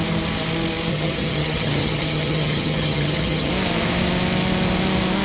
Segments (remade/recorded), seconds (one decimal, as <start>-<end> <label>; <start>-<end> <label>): 0.0-0.9 recorded; 0.9-3.5 remade; 3.5-5.2 recorded